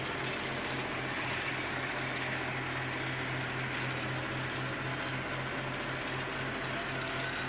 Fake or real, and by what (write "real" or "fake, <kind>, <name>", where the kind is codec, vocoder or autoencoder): real